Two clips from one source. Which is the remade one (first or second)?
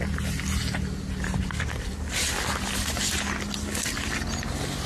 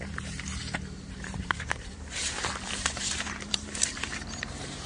second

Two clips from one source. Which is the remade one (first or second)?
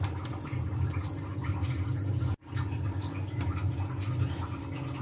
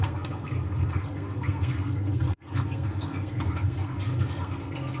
second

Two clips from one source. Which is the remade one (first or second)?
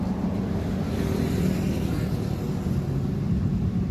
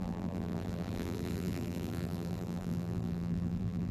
second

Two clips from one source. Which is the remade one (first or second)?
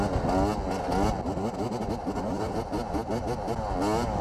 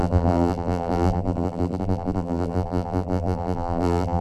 second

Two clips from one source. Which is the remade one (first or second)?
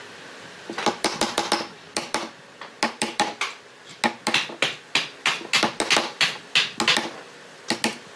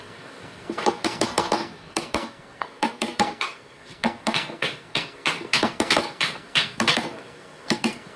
second